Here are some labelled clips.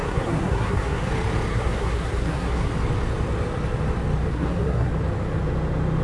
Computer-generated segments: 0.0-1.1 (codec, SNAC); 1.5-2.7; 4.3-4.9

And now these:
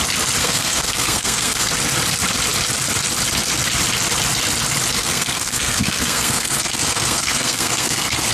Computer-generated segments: 0.4-1.7 (codec, SNAC); 5.0-8.3

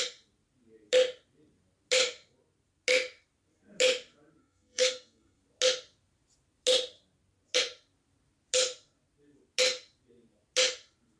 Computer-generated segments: 4.4-5.4 (codec, SNAC)